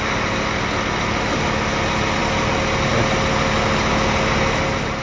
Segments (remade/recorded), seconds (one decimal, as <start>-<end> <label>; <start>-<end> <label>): 0.0-5.0 recorded